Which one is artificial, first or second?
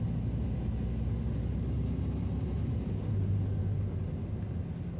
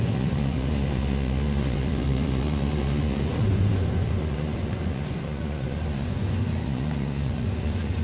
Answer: second